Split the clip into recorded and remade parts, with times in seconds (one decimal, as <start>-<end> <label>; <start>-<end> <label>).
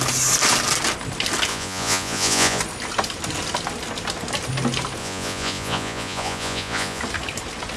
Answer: 0.0-1.5 recorded; 1.5-2.6 remade; 2.6-5.0 recorded; 5.0-7.0 remade; 7.0-7.8 recorded